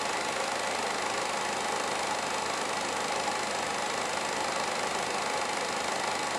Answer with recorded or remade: recorded